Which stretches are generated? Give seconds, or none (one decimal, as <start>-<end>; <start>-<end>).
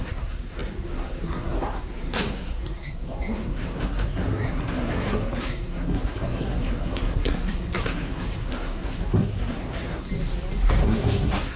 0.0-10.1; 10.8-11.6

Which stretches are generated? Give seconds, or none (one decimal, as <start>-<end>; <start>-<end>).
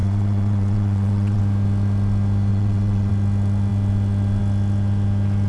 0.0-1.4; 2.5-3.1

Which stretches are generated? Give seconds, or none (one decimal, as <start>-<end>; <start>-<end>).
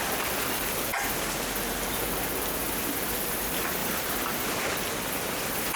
0.0-0.9; 3.2-3.8; 4.6-5.8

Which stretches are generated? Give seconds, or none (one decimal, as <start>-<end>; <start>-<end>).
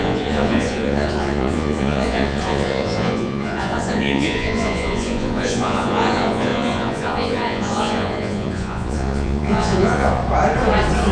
0.0-10.2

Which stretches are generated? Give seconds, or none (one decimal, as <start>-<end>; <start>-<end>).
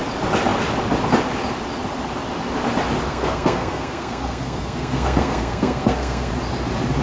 3.1-6.3